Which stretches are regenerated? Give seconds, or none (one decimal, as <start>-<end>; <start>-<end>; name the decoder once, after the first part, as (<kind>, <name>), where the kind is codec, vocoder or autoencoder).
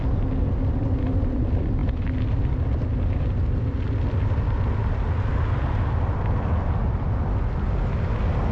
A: none